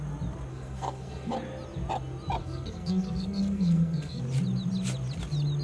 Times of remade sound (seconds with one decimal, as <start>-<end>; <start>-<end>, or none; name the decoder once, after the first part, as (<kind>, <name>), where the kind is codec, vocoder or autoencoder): 0.5-1.3 (codec, SNAC); 2.4-4.2